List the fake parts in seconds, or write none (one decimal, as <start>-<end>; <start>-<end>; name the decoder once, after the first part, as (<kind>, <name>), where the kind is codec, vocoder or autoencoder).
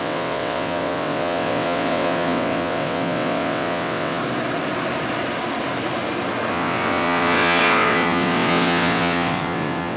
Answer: 0.0-4.2 (vocoder, WaveNeXt); 6.5-10.0